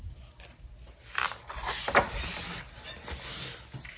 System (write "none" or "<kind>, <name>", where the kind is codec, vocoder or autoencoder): none